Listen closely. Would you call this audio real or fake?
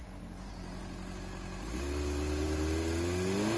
real